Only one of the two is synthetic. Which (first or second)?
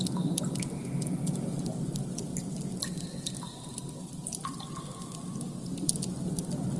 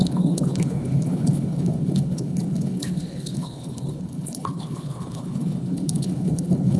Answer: second